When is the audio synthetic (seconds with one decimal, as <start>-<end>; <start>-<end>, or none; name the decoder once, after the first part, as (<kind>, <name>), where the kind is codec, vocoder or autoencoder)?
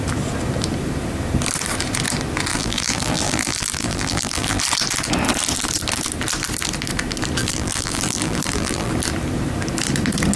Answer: 2.5-4.6 (vocoder, BigVGAN v2); 7.4-8.9